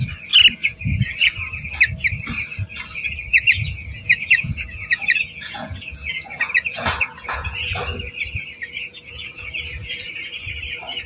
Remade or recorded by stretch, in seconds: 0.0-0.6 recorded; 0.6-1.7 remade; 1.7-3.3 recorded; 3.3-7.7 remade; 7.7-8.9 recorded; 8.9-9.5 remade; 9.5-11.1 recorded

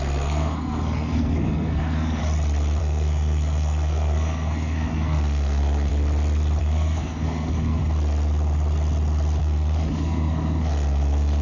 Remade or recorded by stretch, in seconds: 0.0-2.2 remade; 2.2-2.8 recorded; 2.8-5.9 remade; 5.9-6.6 recorded; 6.6-7.8 remade; 7.8-9.4 recorded; 9.4-11.4 remade

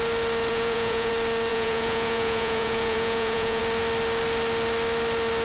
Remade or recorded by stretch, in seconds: 0.0-0.5 recorded; 0.5-1.1 remade; 1.1-1.5 recorded; 1.5-3.6 remade; 3.6-5.4 recorded

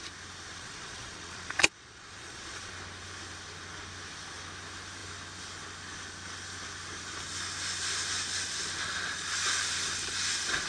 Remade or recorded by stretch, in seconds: 0.0-0.5 recorded; 0.5-2.7 remade; 2.7-10.7 recorded

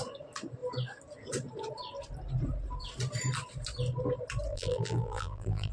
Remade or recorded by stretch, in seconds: 0.0-4.5 recorded; 4.5-5.7 remade

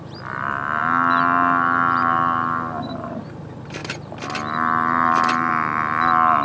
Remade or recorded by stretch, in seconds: 0.0-6.4 recorded

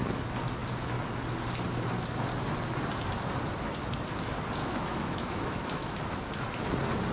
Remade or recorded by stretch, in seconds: 0.0-4.6 recorded; 4.6-6.0 remade; 6.0-7.1 recorded